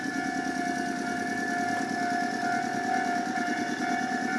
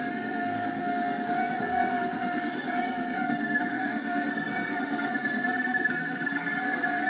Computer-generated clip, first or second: second